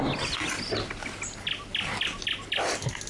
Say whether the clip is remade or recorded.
recorded